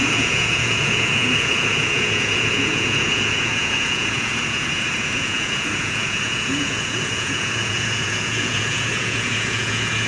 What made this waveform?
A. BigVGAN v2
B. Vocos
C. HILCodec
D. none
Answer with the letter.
B